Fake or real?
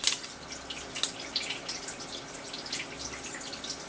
real